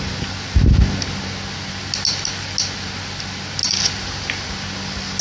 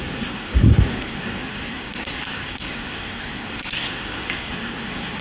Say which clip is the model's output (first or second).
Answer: second